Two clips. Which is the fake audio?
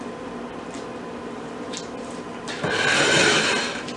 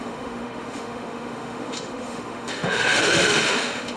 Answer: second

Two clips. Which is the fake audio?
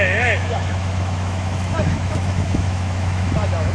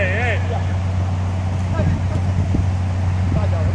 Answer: first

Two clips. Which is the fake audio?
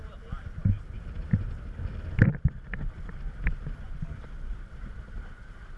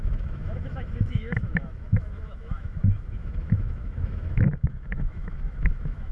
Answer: second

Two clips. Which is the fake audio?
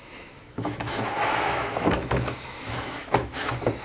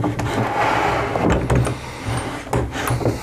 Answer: first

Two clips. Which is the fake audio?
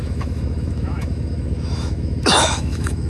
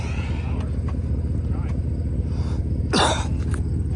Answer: first